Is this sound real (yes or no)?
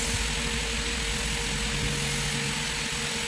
yes